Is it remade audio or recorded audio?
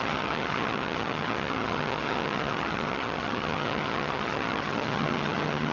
remade